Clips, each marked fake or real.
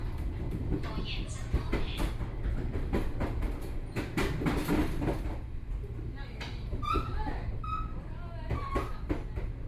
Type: real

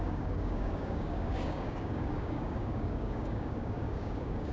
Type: fake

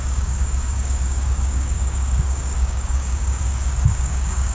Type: fake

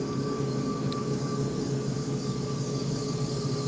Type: fake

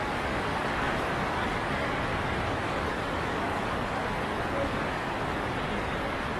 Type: fake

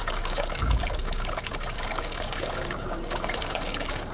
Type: fake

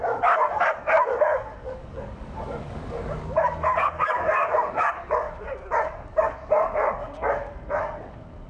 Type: fake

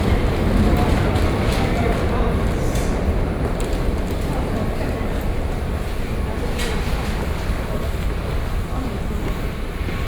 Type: real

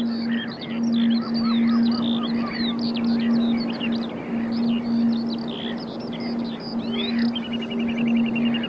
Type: real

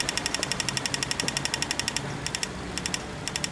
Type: real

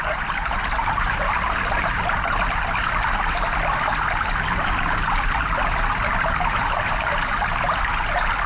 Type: real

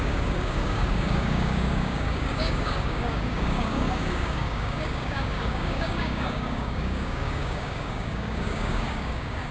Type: fake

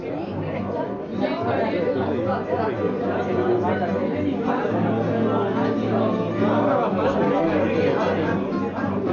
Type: real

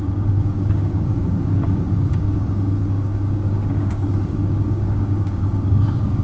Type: fake